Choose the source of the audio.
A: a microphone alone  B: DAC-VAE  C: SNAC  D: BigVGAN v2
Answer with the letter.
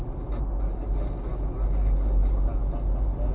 A